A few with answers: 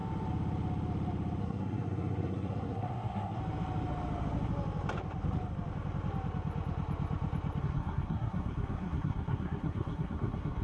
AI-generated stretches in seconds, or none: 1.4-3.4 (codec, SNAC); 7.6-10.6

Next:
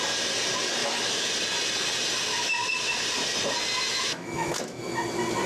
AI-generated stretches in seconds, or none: 0.8-1.3 (autoencoder, DAC-VAE); 2.3-2.8; 3.9-4.8

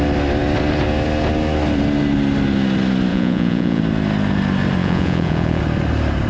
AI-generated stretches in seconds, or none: 3.1-3.8 (vocoder, Vocos); 4.8-5.6

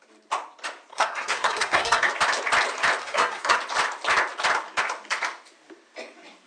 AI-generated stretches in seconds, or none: 0.9-2.1 (codec, SNAC); 3.0-3.6

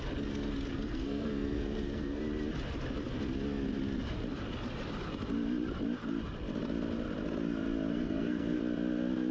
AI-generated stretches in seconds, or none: 0.7-2.2 (codec, SNAC); 7.9-8.6